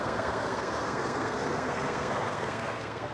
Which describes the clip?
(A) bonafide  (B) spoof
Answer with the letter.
B